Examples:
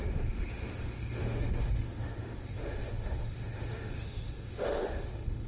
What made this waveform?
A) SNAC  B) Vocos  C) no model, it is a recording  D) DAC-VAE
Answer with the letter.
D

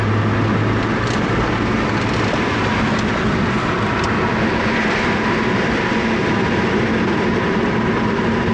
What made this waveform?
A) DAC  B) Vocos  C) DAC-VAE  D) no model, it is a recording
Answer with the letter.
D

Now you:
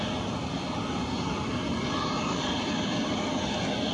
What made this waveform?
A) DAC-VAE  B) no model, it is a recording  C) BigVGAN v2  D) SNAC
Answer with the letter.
B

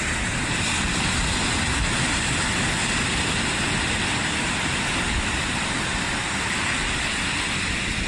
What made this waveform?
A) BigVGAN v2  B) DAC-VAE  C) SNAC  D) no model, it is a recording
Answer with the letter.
D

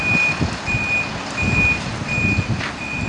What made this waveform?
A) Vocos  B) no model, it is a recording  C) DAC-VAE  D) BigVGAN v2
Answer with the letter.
B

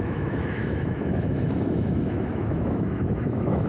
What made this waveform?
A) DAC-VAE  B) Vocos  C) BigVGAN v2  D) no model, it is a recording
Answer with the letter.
A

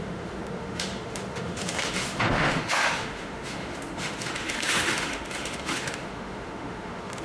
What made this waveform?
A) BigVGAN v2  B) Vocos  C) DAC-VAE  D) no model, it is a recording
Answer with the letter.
C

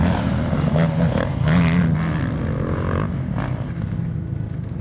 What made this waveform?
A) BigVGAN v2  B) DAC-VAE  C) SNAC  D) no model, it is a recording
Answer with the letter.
D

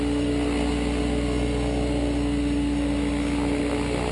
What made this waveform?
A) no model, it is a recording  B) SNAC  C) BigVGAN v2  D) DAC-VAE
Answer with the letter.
A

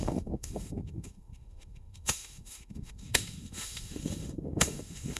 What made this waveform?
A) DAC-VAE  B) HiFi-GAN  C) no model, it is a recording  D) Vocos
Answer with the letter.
A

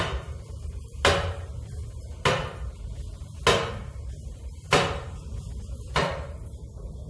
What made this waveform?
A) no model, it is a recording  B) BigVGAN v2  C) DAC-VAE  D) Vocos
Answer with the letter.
A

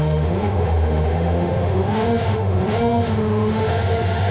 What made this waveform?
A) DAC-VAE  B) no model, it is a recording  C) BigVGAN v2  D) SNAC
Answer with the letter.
A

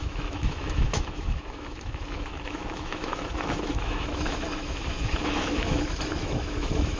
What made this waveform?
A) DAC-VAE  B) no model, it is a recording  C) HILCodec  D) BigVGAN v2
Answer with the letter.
A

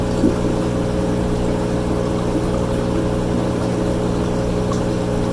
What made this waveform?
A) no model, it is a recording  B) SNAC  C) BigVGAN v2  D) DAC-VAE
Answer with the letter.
A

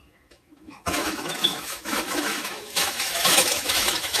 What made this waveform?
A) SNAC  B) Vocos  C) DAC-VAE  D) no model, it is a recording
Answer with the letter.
C